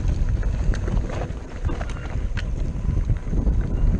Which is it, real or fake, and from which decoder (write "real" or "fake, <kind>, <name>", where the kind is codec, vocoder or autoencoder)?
real